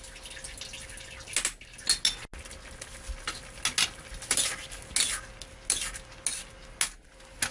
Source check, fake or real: real